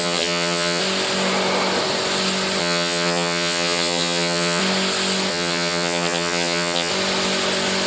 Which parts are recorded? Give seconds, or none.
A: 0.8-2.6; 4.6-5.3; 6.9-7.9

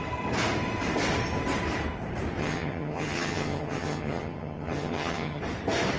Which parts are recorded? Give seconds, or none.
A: 0.0-2.4; 5.4-6.0

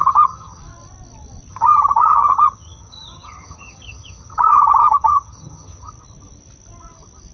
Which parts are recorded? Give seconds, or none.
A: 0.6-1.5; 5.9-7.3